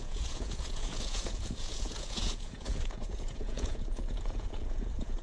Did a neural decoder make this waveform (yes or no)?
yes